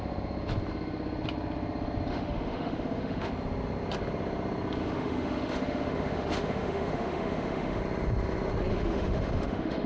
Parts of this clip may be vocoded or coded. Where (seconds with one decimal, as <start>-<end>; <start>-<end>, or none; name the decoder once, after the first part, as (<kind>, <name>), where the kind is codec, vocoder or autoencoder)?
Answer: 2.1-3.3 (autoencoder, DAC-VAE); 4.8-7.8; 8.7-9.9